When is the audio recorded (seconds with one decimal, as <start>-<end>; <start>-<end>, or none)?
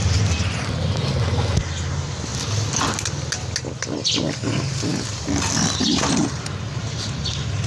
0.0-7.7